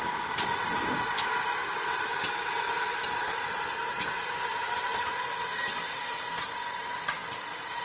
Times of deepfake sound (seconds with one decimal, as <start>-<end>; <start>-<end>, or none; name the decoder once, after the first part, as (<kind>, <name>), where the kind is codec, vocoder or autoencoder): 4.5-5.1 (vocoder, BigVGAN v2)